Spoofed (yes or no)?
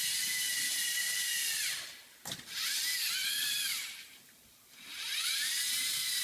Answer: no